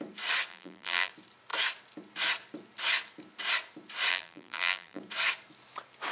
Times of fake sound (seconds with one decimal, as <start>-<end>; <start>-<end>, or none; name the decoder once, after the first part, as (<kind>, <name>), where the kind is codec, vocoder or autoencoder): 0.5-1.1 (vocoder, BigVGAN v2); 4.1-5.0

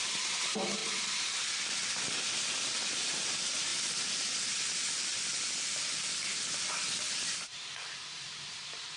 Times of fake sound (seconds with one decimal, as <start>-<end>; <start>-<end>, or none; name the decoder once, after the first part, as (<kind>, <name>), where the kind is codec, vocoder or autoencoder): 0.0-3.7 (vocoder, BigVGAN v2); 4.5-5.1; 7.3-9.0

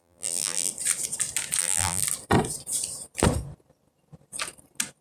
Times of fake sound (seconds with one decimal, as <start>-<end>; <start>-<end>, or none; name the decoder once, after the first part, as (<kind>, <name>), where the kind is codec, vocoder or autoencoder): 0.0-0.7 (vocoder, BigVGAN v2); 1.6-2.0

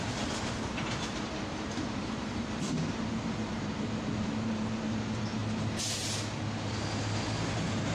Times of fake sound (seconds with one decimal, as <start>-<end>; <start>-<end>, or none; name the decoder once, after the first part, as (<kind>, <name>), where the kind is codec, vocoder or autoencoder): 0.0-5.4 (vocoder, BigVGAN v2); 6.7-7.9

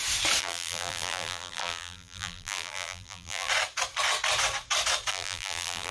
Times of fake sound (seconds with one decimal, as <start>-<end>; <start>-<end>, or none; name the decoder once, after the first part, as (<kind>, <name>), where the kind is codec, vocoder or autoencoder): 0.4-3.5 (vocoder, BigVGAN v2); 5.1-5.9